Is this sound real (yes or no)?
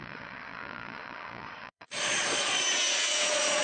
no